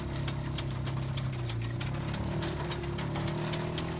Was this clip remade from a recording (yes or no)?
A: no